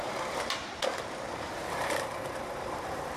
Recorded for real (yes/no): no